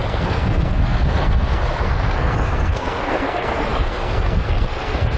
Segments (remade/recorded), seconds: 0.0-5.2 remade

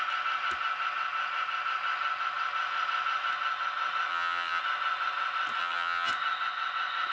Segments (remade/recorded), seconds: 0.0-4.1 recorded; 4.1-4.6 remade; 4.6-5.6 recorded; 5.6-6.1 remade; 6.1-7.1 recorded

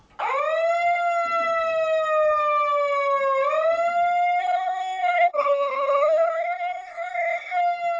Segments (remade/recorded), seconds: 0.0-4.4 recorded; 4.4-7.6 remade; 7.6-8.0 recorded

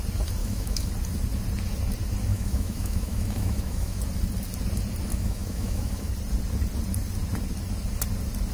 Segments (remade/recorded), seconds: 0.0-0.4 recorded; 0.4-0.9 remade; 0.9-2.3 recorded; 2.3-4.0 remade; 4.0-5.1 recorded; 5.1-6.1 remade; 6.1-8.5 recorded